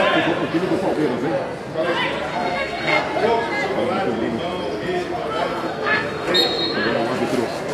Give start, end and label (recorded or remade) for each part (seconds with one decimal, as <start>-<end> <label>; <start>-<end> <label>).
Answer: 0.0-2.3 recorded; 2.3-3.0 remade; 3.0-5.5 recorded; 5.5-6.3 remade; 6.3-7.7 recorded